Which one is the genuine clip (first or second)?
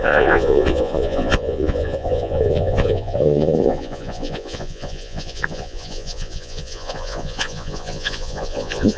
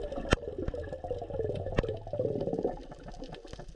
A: second